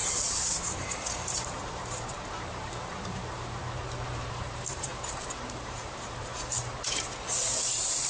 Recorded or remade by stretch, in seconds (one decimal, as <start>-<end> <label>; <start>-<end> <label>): 0.0-3.6 remade; 3.6-4.3 recorded; 4.3-4.9 remade; 4.9-5.4 recorded; 5.4-6.3 remade; 6.3-7.6 recorded; 7.6-8.1 remade